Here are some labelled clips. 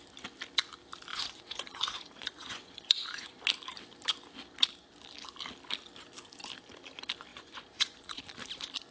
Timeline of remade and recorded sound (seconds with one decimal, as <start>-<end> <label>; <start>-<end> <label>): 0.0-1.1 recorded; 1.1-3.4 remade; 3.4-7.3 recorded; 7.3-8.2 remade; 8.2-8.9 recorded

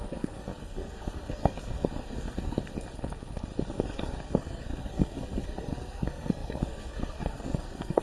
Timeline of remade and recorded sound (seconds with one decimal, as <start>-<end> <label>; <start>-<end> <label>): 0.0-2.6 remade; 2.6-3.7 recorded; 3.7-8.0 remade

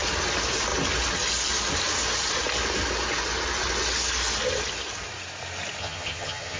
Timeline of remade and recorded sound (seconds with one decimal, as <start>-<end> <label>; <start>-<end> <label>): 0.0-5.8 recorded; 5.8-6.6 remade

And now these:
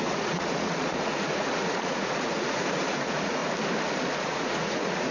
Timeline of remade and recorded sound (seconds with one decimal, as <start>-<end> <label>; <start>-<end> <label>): 0.0-3.4 remade; 3.4-4.2 recorded; 4.2-5.1 remade

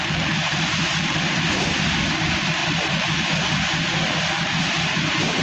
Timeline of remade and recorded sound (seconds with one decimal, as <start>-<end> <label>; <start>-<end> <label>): 0.0-5.4 remade